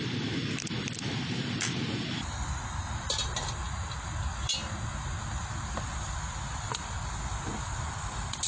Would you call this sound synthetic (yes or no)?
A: no